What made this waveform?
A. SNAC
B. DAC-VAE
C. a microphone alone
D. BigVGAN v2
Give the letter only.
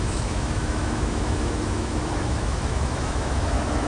B